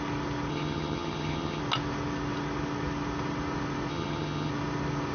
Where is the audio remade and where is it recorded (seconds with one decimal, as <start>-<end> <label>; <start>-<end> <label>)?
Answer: 0.0-0.5 recorded; 0.5-1.6 remade; 1.6-3.9 recorded; 3.9-4.5 remade; 4.5-5.1 recorded